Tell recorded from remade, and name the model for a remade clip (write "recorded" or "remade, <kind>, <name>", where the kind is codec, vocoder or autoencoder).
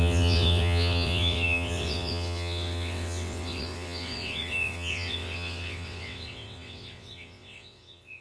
remade, vocoder, WaveNeXt